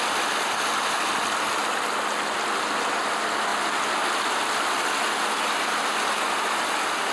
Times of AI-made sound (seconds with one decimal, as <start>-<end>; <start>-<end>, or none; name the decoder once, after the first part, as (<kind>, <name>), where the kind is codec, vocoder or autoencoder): none